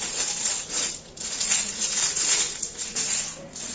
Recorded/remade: remade